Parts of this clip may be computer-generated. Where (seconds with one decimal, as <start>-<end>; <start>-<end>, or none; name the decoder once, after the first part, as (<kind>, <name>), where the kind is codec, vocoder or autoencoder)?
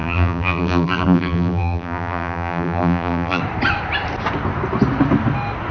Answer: 0.0-3.4 (vocoder, BigVGAN v2)